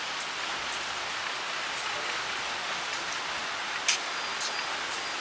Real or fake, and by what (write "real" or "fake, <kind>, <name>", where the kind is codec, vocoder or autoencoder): real